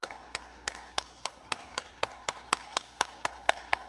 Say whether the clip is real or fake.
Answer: fake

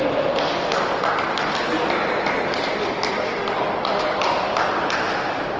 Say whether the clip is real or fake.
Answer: real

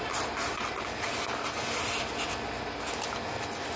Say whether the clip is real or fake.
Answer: real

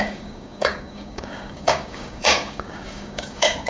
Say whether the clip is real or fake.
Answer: fake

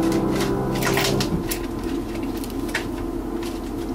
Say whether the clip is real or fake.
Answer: real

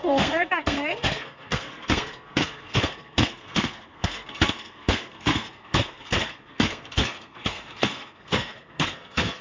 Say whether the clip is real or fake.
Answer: fake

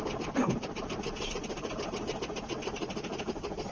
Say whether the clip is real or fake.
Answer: real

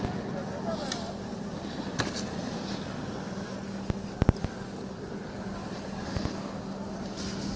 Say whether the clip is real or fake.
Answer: real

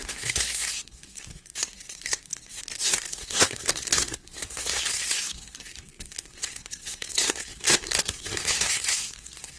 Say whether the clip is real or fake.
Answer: fake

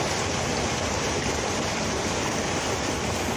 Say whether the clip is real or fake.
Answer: real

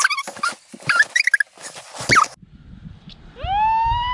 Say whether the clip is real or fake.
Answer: real